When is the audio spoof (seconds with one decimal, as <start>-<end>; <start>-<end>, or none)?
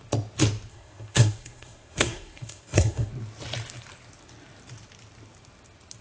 0.7-3.1